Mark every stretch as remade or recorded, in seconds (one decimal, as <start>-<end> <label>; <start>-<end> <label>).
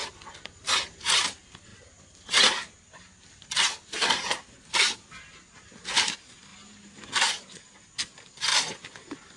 0.0-9.4 recorded